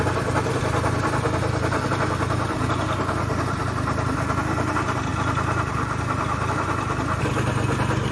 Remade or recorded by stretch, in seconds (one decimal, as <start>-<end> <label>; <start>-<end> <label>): 0.0-8.1 recorded